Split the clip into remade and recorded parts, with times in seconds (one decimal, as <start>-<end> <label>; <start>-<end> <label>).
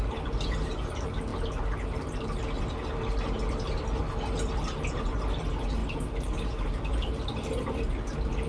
0.0-8.5 recorded